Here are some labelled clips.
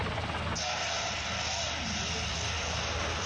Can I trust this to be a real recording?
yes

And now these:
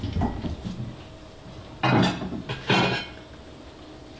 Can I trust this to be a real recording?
yes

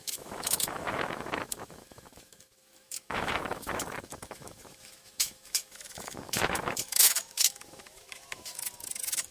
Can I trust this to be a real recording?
no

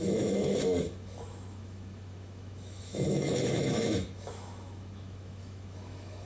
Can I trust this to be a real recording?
no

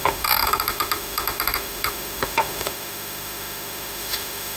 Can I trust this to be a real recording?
no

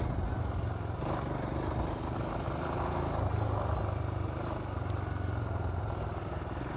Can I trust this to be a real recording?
yes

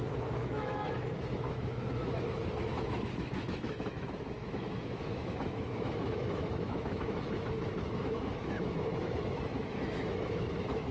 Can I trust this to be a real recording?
no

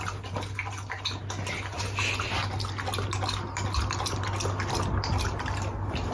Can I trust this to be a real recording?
yes